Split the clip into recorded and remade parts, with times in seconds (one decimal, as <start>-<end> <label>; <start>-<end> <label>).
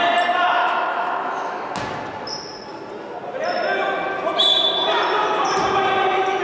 0.0-0.6 recorded; 0.6-1.7 remade; 1.7-6.4 recorded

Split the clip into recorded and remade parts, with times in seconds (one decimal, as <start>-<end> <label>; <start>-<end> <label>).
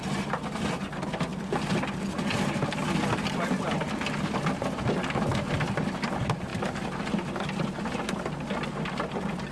0.0-9.5 recorded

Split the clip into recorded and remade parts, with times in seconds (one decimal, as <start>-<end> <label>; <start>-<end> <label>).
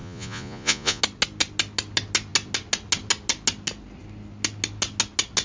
0.0-1.0 remade; 1.0-5.4 recorded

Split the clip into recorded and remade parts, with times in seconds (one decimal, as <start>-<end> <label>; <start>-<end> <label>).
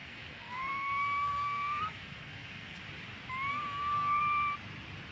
0.0-2.8 remade; 2.8-3.5 recorded; 3.5-4.2 remade; 4.2-5.1 recorded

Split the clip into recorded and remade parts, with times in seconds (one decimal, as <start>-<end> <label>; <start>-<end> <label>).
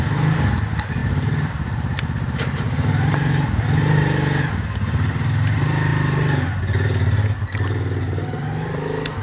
0.0-1.0 recorded; 1.0-3.6 remade; 3.6-9.2 recorded